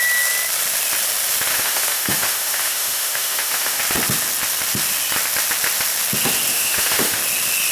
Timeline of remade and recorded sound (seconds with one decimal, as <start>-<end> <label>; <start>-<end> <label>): 0.0-1.5 recorded; 1.5-3.8 remade; 3.8-6.5 recorded; 6.5-7.2 remade; 7.2-7.7 recorded